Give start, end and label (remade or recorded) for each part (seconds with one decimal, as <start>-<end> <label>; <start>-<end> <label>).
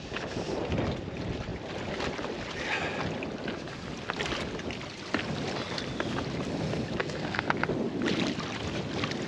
0.0-7.0 recorded; 7.0-7.5 remade; 7.5-9.3 recorded